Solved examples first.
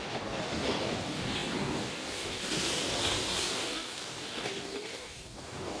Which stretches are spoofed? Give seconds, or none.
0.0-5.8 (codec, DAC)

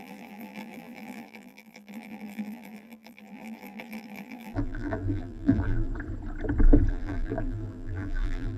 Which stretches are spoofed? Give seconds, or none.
0.0-5.9 (vocoder, BigVGAN v2); 6.9-8.6

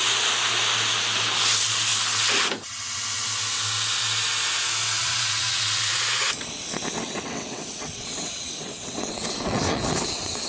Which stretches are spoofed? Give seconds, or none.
5.0-10.5 (vocoder, WaveNeXt)

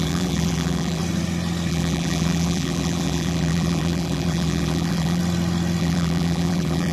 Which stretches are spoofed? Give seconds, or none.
0.0-1.0 (vocoder, BigVGAN v2); 1.7-5.2; 5.8-6.9